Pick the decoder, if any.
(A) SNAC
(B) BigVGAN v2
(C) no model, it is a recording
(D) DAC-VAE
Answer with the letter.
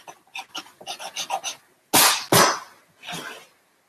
C